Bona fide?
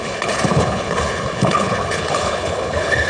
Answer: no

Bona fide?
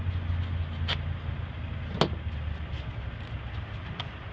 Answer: yes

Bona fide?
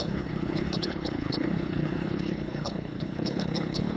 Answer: no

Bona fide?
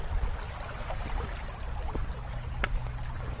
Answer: yes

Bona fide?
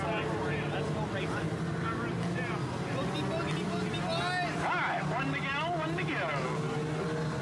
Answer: yes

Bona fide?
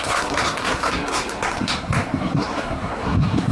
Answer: no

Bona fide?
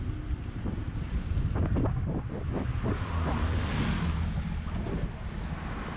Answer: yes